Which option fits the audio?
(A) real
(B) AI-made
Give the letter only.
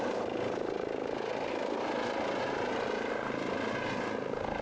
A